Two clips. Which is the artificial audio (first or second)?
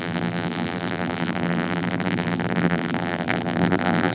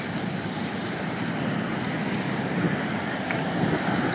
first